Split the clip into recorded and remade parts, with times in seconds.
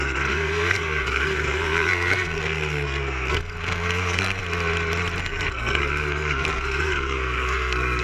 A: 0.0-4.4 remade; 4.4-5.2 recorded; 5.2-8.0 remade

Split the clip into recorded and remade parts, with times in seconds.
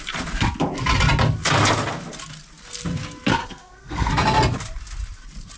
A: 0.0-3.4 recorded; 3.4-4.1 remade; 4.1-5.6 recorded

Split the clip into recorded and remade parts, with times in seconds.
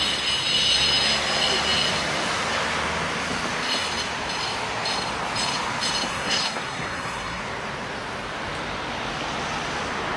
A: 0.0-6.1 recorded; 6.1-7.4 remade; 7.4-10.2 recorded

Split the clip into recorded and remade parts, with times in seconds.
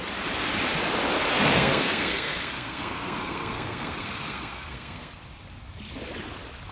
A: 0.0-1.3 recorded; 1.3-5.2 remade; 5.2-6.7 recorded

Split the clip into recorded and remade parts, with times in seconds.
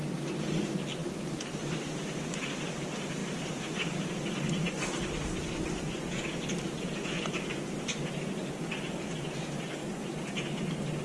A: 0.0-11.0 recorded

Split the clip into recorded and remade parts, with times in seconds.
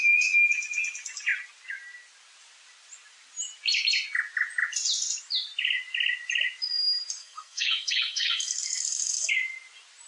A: 0.0-7.2 recorded; 7.2-9.3 remade; 9.3-10.1 recorded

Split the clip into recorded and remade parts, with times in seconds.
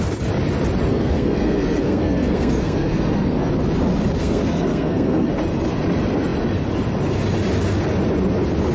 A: 0.0-0.9 recorded; 0.9-3.5 remade; 3.5-4.2 recorded; 4.2-5.3 remade; 5.3-8.7 recorded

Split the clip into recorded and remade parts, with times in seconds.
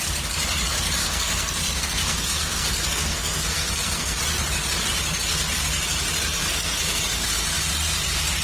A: 0.0-1.0 recorded; 1.0-4.2 remade; 4.2-6.4 recorded; 6.4-7.0 remade; 7.0-8.4 recorded